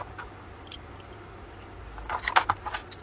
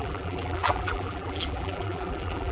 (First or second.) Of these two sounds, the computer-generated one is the second